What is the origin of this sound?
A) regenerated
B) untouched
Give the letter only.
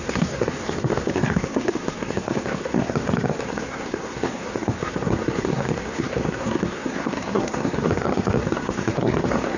A